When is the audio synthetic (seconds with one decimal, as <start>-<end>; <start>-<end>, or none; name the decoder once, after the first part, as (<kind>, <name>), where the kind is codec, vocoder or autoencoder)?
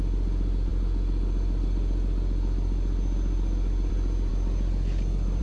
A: none